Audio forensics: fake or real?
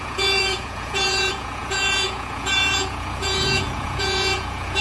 fake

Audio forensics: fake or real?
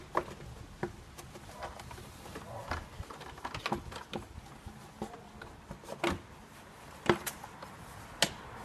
real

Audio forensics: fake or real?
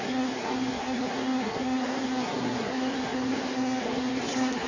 fake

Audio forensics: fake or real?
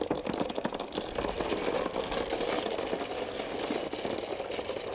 real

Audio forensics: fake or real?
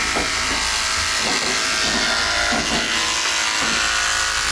real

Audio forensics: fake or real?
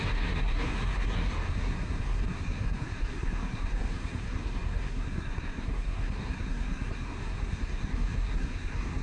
fake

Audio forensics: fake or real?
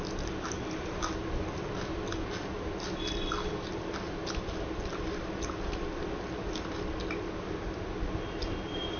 real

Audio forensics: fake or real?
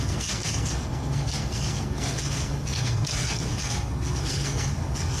fake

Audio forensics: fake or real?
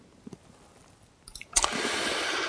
real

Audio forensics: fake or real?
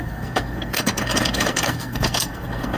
fake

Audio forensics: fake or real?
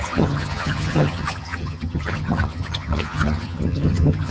fake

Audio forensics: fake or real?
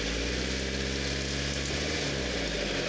real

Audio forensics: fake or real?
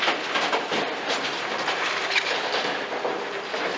real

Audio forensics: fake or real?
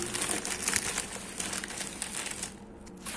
real